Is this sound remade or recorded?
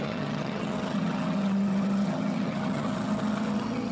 remade